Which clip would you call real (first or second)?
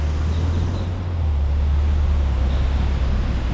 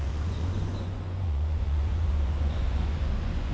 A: first